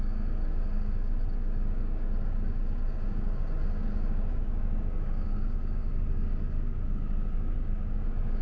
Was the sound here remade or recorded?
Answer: remade